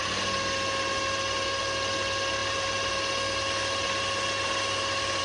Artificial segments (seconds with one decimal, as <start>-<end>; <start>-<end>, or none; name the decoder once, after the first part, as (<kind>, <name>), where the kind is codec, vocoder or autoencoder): none